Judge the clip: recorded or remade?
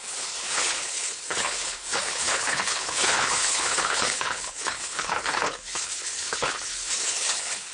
remade